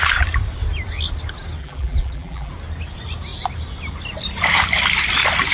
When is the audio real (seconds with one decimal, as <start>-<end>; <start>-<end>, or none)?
0.0-1.6; 2.5-5.5